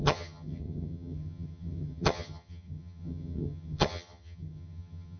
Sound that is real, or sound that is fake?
fake